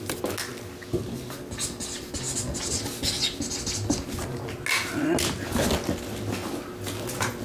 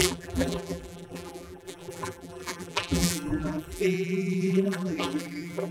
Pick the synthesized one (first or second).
second